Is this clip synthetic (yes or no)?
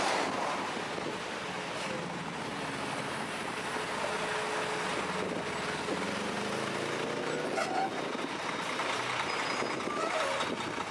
no